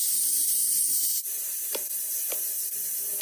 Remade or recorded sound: remade